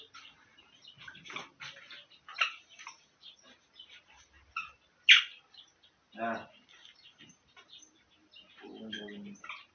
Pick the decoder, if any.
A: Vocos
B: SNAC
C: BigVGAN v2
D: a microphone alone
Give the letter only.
D